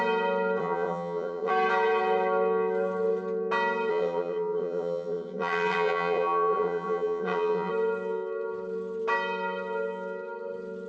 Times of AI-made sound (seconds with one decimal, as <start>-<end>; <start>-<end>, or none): 0.6-1.5; 3.9-7.7